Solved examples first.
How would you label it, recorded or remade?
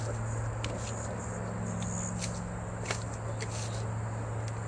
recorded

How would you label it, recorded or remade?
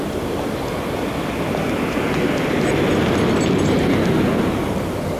recorded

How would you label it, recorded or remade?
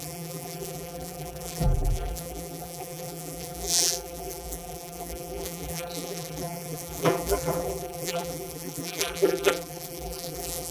remade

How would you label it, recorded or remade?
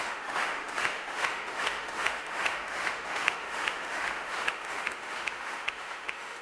remade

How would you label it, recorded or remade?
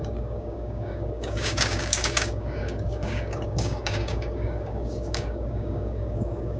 remade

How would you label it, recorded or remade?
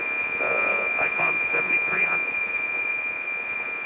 remade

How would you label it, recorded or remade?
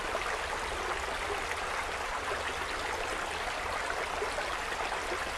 recorded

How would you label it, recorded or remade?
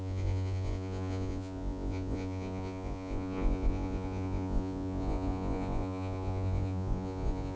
remade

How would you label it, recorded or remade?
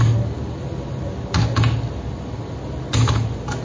recorded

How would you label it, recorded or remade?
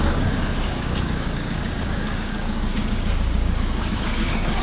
remade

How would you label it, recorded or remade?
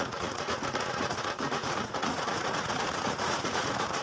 remade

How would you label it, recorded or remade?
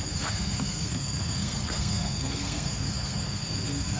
remade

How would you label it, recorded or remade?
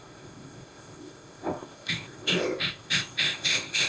remade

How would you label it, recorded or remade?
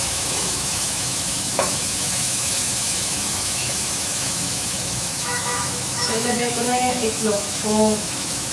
remade